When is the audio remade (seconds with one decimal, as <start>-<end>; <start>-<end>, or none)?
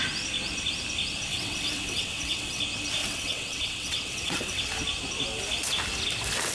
1.3-2.6; 3.0-4.7